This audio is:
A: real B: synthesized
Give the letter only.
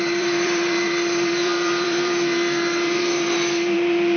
B